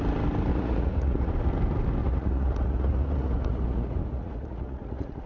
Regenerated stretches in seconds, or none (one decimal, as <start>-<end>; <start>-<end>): 0.5-1.3; 2.0-5.3

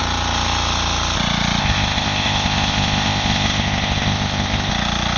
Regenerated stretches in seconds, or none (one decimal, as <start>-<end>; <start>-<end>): 1.6-4.7

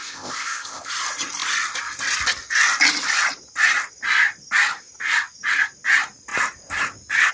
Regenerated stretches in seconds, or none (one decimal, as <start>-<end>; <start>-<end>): 0.0-0.9

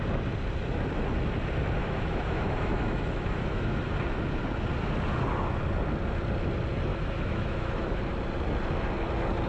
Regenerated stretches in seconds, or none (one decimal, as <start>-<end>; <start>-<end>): 1.8-3.8; 6.9-8.0

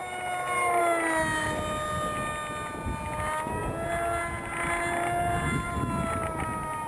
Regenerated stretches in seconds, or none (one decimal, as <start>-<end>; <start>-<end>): none

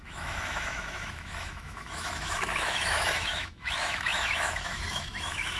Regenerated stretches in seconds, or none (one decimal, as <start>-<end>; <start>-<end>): 0.0-5.6

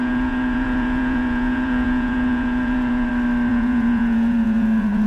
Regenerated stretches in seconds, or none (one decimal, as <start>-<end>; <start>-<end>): 0.0-3.1; 3.5-5.1